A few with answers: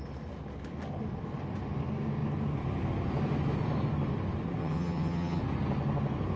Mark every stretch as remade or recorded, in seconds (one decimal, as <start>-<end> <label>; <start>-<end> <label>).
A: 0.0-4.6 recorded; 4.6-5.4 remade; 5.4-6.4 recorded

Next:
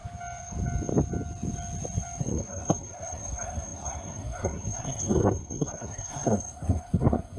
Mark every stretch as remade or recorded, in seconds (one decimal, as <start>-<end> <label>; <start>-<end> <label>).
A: 0.0-2.2 recorded; 2.2-7.4 remade

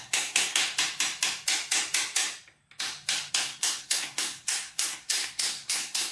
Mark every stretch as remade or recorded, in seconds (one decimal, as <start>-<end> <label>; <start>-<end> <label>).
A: 0.0-0.6 remade; 0.6-3.3 recorded; 3.3-6.1 remade

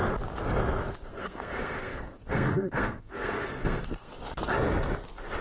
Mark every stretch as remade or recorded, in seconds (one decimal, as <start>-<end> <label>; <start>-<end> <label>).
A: 0.0-1.1 recorded; 1.1-4.1 remade; 4.1-5.4 recorded

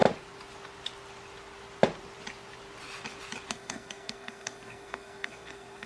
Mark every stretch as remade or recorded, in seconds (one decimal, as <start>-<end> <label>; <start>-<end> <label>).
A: 0.0-3.5 recorded; 3.5-5.9 remade

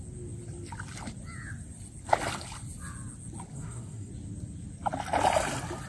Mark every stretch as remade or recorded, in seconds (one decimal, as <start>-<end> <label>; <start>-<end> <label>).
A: 0.0-3.5 recorded; 3.5-4.1 remade; 4.1-5.9 recorded